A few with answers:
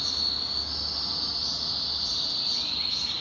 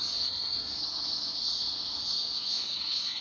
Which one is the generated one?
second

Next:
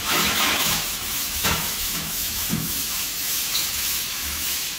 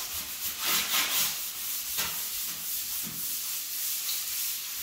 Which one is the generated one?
first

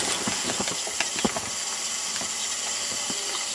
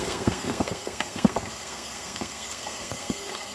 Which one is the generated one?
second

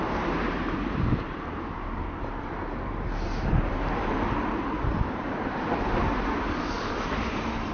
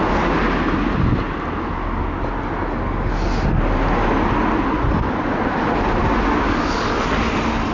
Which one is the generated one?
first